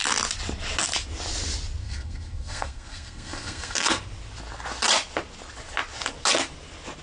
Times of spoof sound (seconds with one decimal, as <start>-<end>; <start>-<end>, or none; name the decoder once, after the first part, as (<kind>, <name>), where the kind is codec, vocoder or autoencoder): 1.8-4.0 (codec, SNAC)

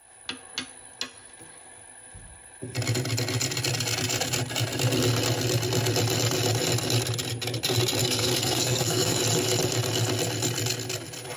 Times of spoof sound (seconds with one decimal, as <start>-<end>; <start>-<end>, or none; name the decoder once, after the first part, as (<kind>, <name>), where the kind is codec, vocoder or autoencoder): 8.0-9.2 (codec, SNAC)

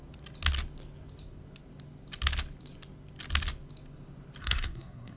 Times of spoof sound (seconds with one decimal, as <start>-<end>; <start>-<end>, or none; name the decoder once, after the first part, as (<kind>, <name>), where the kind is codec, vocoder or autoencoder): 4.4-5.2 (codec, SNAC)

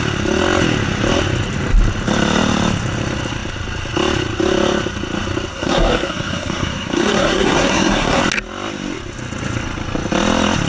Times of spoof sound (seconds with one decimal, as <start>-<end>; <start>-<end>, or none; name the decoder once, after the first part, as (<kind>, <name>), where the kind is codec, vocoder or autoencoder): 5.5-8.2 (codec, SNAC)

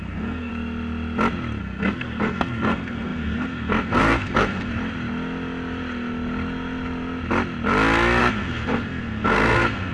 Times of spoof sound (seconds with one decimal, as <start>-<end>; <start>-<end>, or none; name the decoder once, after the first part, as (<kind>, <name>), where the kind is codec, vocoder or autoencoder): 0.0-0.5 (codec, SNAC); 1.6-4.7; 8.2-9.9

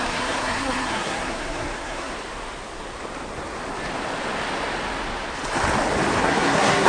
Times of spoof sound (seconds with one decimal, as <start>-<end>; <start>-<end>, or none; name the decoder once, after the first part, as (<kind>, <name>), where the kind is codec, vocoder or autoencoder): 0.0-2.1 (codec, SNAC); 6.2-6.9

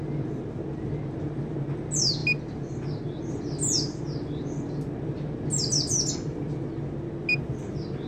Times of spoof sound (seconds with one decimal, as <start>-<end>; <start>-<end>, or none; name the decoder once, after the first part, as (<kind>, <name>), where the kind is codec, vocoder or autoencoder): none

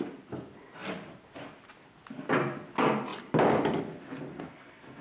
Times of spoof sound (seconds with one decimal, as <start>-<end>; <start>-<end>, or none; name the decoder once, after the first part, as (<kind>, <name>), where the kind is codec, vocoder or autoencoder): 4.3-5.0 (codec, SNAC)